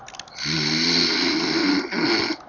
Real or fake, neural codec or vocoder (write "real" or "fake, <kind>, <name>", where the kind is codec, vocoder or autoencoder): real